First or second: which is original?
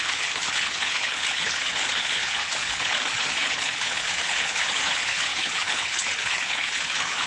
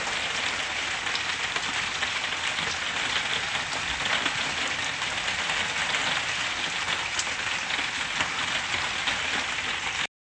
second